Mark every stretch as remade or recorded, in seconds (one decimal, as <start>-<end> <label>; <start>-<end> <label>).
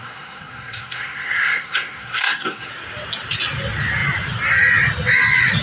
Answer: 0.0-2.7 remade; 2.7-5.6 recorded